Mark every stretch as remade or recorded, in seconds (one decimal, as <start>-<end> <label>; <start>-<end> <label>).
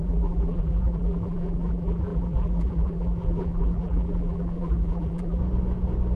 0.0-5.4 remade; 5.4-6.2 recorded